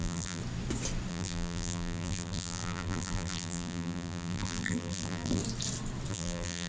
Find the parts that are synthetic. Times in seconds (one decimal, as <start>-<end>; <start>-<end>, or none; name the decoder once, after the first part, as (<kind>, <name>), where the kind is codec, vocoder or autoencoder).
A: 0.0-0.4 (vocoder, BigVGAN v2); 1.1-5.4; 6.1-6.7